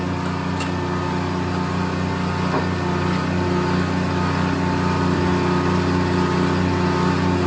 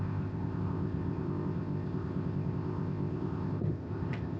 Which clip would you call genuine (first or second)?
first